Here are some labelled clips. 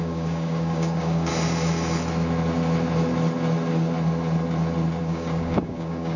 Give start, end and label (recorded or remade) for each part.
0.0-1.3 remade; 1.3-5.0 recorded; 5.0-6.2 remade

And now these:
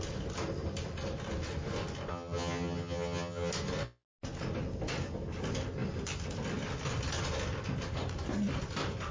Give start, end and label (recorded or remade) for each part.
0.0-2.1 recorded; 2.1-3.5 remade; 3.5-9.1 recorded

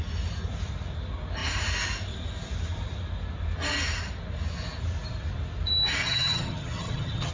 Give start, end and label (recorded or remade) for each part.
0.0-6.0 recorded; 6.0-7.3 remade

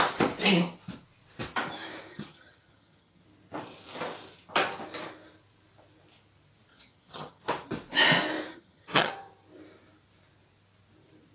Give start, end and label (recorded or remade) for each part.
0.0-2.1 recorded; 2.1-3.2 remade; 3.2-6.7 recorded; 6.7-7.4 remade; 7.4-8.5 recorded; 8.5-9.1 remade; 9.1-11.3 recorded

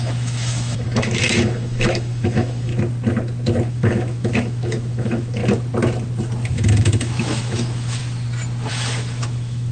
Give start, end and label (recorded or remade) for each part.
0.0-2.7 remade; 2.7-3.7 recorded; 3.7-5.4 remade; 5.4-6.5 recorded; 6.5-8.0 remade; 8.0-8.7 recorded; 8.7-9.7 remade

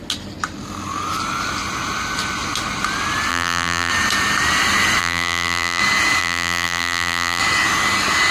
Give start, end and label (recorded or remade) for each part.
0.0-3.3 recorded; 3.3-3.9 remade; 3.9-5.0 recorded; 5.0-5.8 remade; 5.8-6.2 recorded; 6.2-7.4 remade; 7.4-8.3 recorded